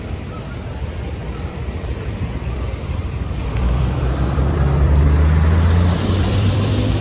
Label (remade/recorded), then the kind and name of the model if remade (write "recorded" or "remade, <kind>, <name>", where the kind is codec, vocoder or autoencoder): remade, vocoder, BigVGAN v2